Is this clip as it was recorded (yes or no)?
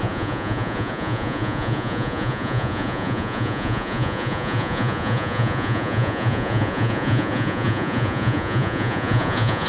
no